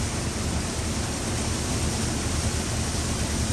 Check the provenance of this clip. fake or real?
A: fake